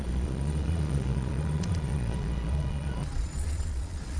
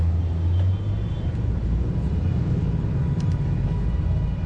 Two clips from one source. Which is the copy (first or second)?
first